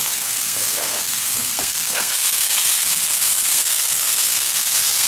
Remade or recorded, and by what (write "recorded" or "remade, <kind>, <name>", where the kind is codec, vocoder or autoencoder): remade, codec, SNAC